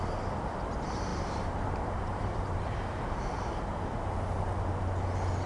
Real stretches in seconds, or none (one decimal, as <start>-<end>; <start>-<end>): 0.0-1.1; 3.5-5.5